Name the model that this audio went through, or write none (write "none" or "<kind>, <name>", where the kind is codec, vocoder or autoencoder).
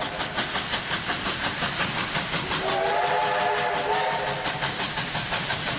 none